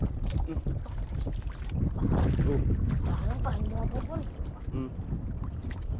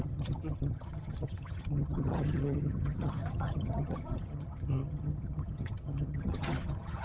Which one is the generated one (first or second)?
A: second